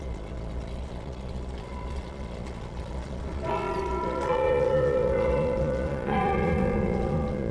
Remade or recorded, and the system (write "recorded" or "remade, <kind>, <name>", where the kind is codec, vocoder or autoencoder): remade, vocoder, Vocos